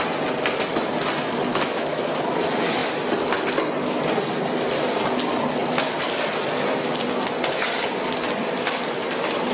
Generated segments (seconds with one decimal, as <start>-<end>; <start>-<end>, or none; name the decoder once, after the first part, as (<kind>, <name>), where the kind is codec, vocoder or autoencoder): 1.5-2.0 (autoencoder, DAC-VAE)